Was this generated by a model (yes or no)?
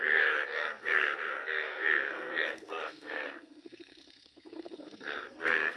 yes